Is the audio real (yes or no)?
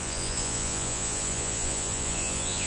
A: no